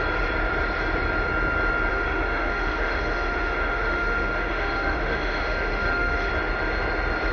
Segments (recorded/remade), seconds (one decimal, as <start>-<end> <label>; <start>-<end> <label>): 0.0-1.9 recorded; 1.9-6.3 remade; 6.3-7.3 recorded